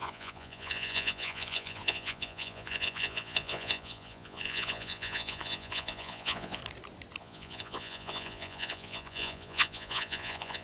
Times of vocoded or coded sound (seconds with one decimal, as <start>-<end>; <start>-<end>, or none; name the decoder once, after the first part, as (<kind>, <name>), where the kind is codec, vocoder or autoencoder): 0.0-6.6 (vocoder, Vocos); 7.2-10.6